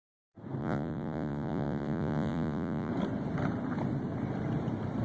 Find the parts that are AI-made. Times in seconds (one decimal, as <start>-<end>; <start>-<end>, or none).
0.6-2.9